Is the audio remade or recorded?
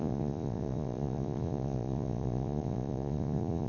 remade